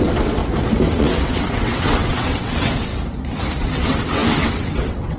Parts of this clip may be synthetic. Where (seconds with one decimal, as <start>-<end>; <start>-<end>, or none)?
0.0-0.4; 1.0-2.9; 3.6-5.2